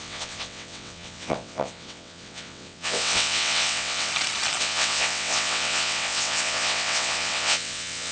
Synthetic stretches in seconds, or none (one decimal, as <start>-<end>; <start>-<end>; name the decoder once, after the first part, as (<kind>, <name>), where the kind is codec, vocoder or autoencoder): 0.0-4.1 (vocoder, WaveNeXt); 4.6-8.1